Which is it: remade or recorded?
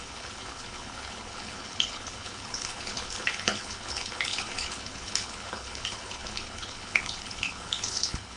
remade